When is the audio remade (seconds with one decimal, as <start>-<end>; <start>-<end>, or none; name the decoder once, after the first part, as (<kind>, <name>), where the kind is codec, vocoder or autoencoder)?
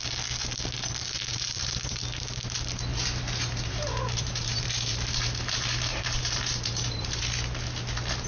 1.3-2.0 (vocoder, BigVGAN v2); 2.9-7.2